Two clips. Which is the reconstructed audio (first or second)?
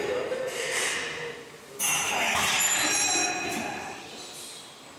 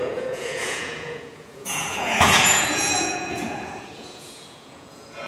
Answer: second